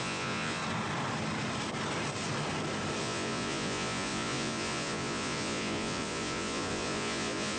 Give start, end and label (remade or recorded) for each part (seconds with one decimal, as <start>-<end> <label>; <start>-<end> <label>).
0.0-0.6 remade; 0.6-3.0 recorded; 3.0-7.6 remade